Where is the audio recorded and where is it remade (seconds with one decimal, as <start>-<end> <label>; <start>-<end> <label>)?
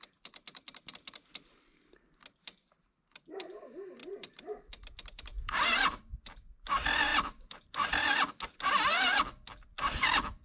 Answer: 0.0-4.0 recorded; 4.0-4.7 remade; 4.7-5.3 recorded; 5.3-6.0 remade; 6.0-7.1 recorded; 7.1-8.3 remade; 8.3-10.4 recorded